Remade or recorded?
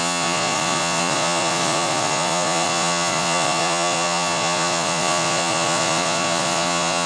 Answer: remade